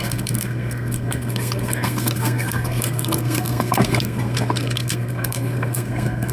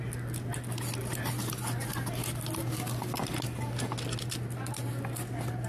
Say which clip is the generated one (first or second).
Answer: first